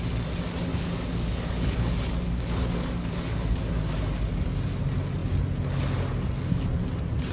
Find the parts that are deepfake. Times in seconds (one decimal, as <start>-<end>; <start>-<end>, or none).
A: 0.7-4.5